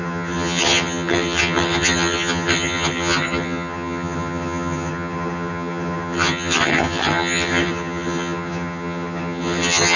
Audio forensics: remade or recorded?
remade